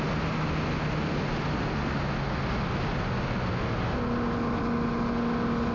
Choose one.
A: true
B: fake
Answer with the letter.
A